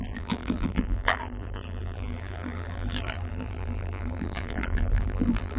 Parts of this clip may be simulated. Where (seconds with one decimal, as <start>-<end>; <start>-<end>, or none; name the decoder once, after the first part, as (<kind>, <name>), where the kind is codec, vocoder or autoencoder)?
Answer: 0.0-5.6 (vocoder, BigVGAN v2)